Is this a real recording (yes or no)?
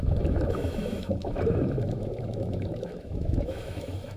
no